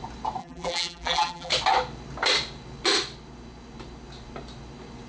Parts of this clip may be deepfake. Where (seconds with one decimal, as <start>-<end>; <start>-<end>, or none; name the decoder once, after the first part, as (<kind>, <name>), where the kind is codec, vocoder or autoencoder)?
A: 0.4-1.5 (vocoder, BigVGAN v2)